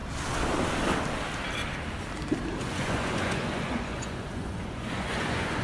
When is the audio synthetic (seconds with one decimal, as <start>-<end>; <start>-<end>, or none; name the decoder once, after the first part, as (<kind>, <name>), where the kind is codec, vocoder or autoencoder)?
2.6-5.6 (vocoder, Vocos)